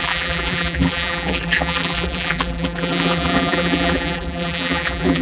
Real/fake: fake